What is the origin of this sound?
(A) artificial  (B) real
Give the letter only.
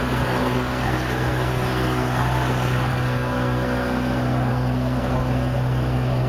A